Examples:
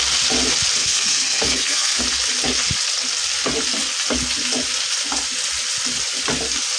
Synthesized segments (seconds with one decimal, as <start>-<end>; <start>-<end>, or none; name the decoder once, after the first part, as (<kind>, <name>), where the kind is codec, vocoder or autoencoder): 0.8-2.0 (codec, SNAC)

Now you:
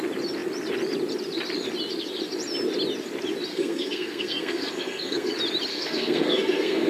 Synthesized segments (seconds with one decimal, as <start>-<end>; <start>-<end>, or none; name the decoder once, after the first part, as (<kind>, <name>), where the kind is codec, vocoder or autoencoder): 3.5-5.3 (codec, SNAC); 5.7-6.9

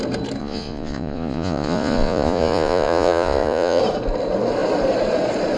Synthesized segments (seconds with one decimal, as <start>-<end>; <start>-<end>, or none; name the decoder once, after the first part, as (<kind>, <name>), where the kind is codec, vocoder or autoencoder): 0.4-3.8 (vocoder, Vocos)

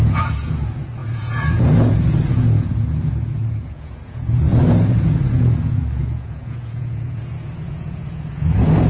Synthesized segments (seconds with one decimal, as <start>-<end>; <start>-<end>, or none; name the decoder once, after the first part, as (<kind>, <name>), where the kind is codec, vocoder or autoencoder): 0.0-8.9 (vocoder, Vocos)

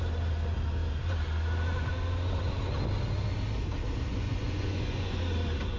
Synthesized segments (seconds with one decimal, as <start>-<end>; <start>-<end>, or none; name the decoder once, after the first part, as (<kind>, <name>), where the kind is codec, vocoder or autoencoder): 4.1-5.2 (vocoder, Vocos)

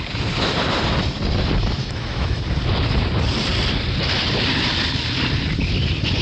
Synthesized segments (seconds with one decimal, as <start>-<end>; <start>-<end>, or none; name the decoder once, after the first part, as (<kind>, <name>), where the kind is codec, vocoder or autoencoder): 1.8-2.4 (autoencoder, DAC-VAE)